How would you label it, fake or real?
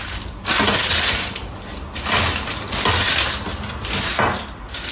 real